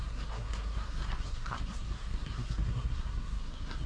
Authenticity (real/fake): fake